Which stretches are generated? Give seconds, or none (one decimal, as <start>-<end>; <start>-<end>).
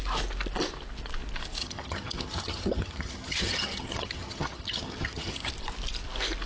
1.6-5.5